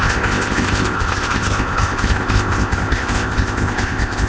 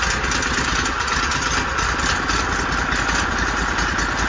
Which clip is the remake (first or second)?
first